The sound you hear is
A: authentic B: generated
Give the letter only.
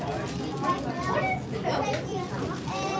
A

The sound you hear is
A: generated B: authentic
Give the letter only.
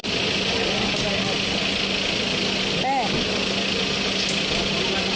B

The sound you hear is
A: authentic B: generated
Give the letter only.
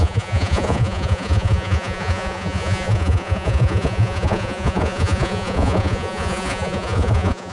B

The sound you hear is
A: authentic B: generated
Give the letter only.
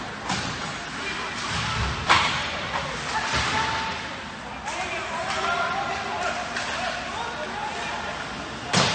A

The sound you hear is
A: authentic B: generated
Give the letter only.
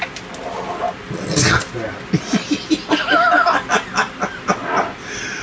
A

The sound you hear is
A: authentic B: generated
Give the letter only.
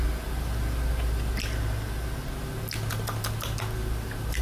A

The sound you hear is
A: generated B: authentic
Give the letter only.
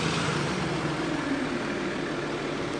B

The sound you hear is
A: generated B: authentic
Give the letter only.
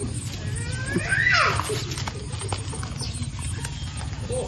B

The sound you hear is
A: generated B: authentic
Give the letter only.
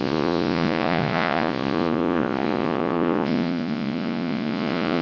A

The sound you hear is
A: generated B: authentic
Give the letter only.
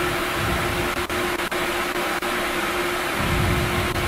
B